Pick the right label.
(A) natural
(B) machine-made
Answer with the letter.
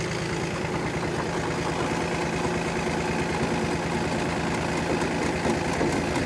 A